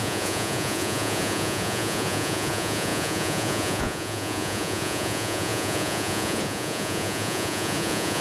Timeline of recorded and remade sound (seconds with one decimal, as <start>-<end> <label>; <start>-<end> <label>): 0.0-8.2 remade